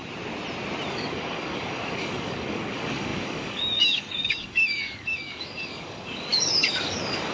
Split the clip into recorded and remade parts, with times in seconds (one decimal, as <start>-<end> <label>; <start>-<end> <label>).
0.0-0.9 recorded; 0.9-7.3 remade

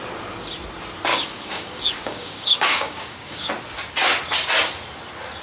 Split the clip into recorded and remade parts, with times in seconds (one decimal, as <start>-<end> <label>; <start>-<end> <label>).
0.0-1.1 recorded; 1.1-3.5 remade; 3.5-5.4 recorded

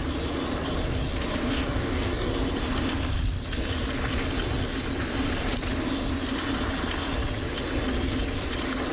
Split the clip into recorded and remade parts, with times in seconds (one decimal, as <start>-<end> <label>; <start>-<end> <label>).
0.0-1.4 recorded; 1.4-2.3 remade; 2.3-8.9 recorded